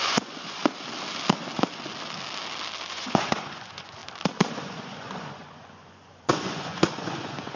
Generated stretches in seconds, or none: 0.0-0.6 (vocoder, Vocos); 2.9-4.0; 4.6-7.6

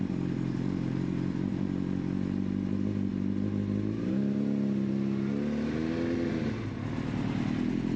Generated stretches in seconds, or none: none

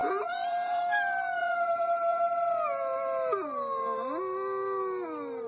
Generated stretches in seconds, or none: 0.0-0.8 (vocoder, Vocos); 1.4-2.2

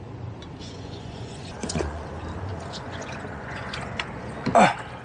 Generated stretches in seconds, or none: 0.6-2.0 (vocoder, Vocos); 2.5-4.5

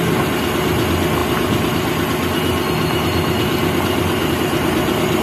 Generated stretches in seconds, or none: none

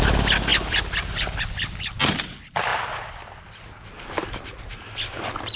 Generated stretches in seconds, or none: none